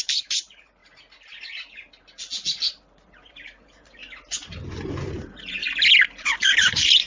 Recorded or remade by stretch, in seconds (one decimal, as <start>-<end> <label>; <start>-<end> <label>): 0.0-0.8 remade; 0.8-2.7 recorded; 2.7-4.0 remade; 4.0-5.0 recorded; 5.0-5.6 remade; 5.6-6.2 recorded; 6.2-7.1 remade